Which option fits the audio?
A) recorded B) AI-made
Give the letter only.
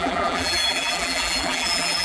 B